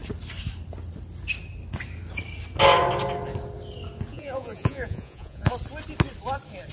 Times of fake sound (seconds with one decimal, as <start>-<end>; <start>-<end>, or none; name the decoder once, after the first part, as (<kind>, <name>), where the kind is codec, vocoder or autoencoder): 4.1-5.5 (vocoder, Vocos)